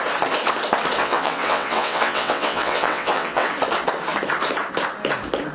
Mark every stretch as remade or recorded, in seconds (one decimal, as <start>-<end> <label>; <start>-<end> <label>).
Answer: 0.0-1.0 recorded; 1.0-3.5 remade; 3.5-5.5 recorded